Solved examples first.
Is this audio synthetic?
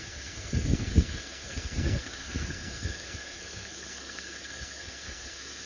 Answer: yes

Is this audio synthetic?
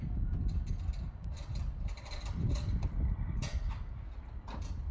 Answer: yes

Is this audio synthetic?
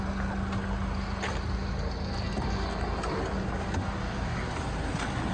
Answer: no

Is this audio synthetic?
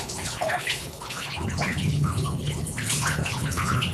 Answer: yes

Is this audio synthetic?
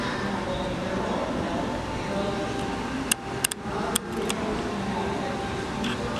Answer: no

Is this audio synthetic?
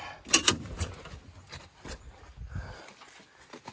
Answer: no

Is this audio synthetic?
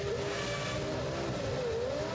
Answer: no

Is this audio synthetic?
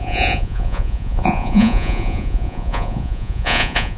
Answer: yes